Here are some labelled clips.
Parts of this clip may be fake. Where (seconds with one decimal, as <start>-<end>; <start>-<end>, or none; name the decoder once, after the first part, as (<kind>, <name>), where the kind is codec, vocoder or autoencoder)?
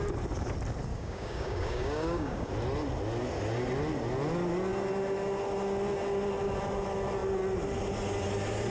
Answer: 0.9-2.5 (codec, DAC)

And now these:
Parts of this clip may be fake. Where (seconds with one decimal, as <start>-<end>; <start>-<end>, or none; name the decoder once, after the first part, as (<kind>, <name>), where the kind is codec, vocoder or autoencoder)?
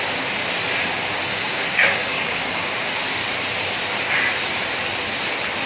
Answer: 1.3-2.7 (codec, DAC)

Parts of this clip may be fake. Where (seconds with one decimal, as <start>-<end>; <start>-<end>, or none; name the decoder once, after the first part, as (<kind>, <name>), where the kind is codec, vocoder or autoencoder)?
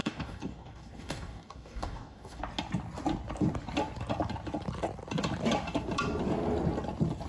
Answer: 0.0-2.4 (codec, DAC)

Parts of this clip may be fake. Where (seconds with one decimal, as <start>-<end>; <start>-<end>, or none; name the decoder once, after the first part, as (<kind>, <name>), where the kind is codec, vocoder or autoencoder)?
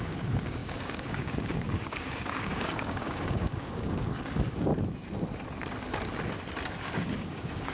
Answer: 0.0-4.7 (codec, DAC); 6.8-7.7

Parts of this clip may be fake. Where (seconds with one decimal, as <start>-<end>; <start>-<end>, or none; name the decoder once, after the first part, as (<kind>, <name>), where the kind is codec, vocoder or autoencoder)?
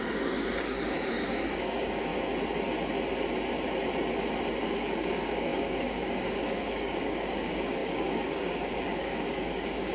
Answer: 0.0-2.1 (codec, DAC); 4.6-9.9